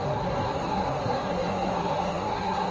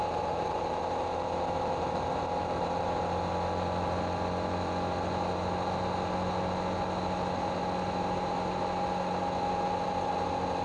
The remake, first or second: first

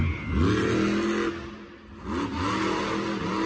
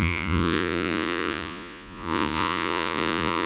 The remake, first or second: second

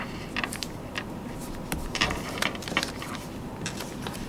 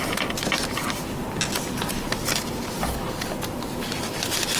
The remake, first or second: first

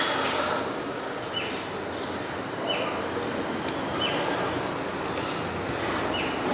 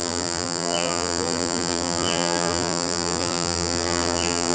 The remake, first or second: second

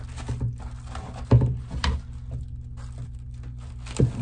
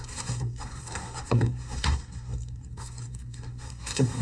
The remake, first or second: second